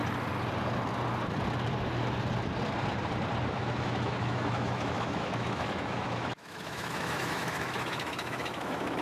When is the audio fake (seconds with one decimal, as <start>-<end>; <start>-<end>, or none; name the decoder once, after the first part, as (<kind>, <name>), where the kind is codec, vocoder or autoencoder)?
3.5-9.0 (autoencoder, DAC-VAE)